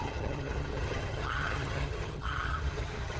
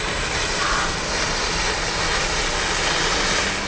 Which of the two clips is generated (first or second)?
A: first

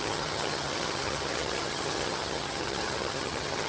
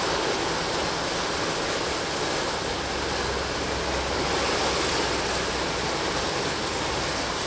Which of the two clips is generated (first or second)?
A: first